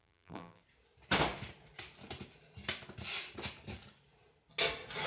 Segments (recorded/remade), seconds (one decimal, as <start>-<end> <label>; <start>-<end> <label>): 0.0-0.6 remade; 0.6-5.1 recorded